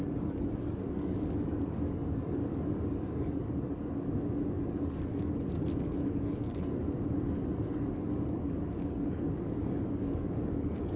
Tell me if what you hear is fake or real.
fake